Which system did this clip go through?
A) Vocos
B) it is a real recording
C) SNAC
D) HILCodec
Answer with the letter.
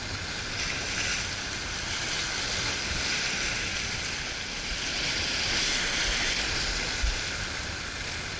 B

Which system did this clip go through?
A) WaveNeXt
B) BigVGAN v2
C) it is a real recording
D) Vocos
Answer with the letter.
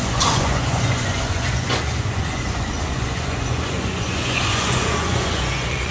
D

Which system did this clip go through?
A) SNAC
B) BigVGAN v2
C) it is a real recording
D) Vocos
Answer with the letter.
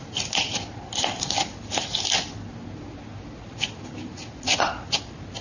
C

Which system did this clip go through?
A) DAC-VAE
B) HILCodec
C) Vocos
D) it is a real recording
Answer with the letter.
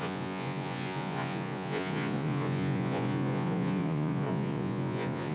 C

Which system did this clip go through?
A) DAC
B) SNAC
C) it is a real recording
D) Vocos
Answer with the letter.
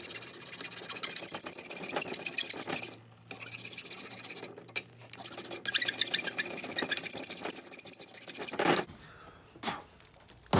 C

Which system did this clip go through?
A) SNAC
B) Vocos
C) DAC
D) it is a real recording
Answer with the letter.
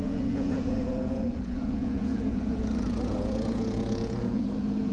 B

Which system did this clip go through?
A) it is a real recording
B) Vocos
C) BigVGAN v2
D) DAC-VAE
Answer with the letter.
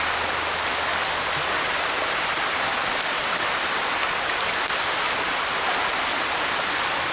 A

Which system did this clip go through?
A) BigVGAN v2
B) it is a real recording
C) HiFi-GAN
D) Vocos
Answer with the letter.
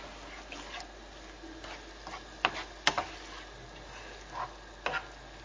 B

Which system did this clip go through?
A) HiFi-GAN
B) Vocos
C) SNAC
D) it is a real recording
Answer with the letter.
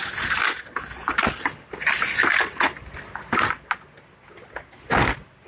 D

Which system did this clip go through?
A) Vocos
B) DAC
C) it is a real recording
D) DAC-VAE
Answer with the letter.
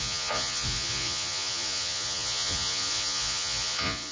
A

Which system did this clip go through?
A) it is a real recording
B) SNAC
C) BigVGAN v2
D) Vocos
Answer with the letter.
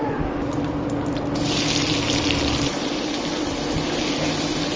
A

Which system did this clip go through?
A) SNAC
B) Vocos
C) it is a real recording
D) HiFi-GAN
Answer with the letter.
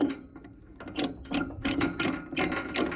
C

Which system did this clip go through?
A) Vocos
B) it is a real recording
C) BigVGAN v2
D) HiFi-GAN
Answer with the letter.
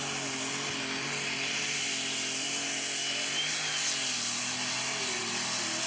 B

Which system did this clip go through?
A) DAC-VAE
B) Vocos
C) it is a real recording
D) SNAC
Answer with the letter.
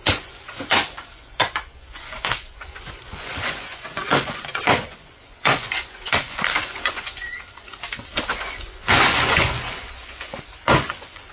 B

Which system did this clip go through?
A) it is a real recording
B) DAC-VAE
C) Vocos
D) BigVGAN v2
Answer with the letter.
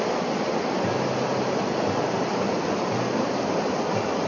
A